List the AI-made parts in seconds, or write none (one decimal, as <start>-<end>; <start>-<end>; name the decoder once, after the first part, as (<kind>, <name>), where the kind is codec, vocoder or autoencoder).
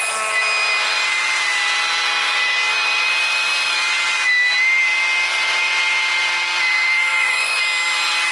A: 7.1-7.6 (vocoder, Vocos)